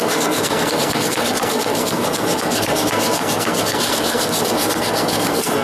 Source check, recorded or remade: remade